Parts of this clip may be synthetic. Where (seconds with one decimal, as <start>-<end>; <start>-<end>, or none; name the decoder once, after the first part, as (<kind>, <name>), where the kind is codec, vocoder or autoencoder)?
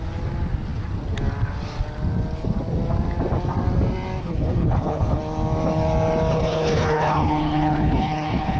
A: 4.2-5.2 (codec, HILCodec); 6.3-8.6